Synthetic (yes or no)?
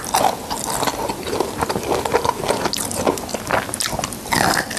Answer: no